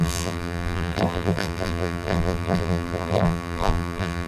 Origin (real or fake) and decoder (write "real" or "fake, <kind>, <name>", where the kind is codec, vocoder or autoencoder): fake, vocoder, BigVGAN v2